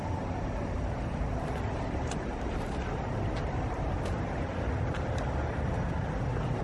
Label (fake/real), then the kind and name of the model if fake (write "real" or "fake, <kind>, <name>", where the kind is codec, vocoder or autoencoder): real